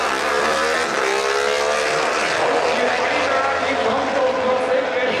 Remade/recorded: recorded